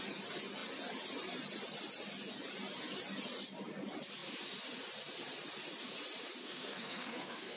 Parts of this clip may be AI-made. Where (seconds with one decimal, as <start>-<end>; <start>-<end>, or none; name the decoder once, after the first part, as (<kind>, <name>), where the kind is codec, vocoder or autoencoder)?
6.4-7.6 (codec, SNAC)